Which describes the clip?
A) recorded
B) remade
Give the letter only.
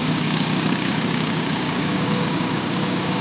B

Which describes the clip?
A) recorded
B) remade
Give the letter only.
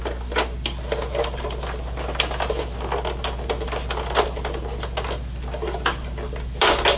A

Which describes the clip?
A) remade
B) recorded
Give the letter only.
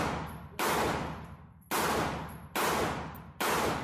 B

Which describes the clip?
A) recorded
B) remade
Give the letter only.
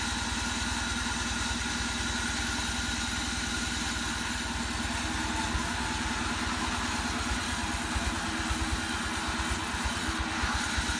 A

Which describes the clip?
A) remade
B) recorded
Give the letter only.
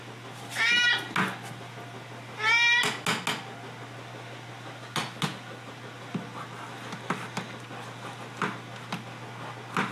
B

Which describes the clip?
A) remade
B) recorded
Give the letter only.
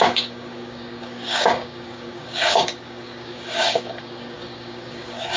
A